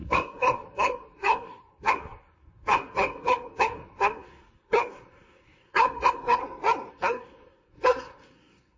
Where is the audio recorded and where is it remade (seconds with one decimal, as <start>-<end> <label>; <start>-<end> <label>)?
0.0-6.4 remade; 6.4-6.9 recorded; 6.9-8.8 remade

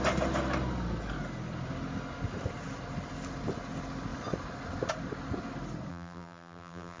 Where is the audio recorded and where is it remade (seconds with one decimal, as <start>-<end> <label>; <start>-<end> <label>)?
0.0-5.9 recorded; 5.9-7.0 remade

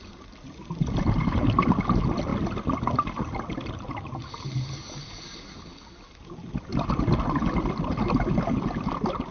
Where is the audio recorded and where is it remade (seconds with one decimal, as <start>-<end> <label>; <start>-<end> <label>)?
0.0-9.3 recorded

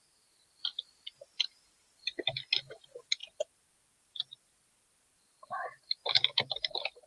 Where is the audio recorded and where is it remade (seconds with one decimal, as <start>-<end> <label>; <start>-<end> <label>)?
0.0-7.1 recorded